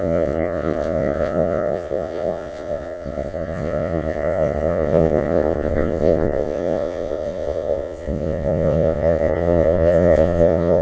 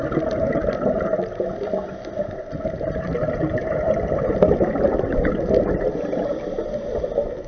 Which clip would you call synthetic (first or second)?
first